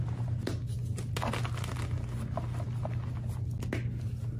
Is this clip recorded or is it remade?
recorded